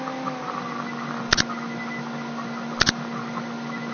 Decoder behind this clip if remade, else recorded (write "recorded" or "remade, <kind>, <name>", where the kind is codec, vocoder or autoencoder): recorded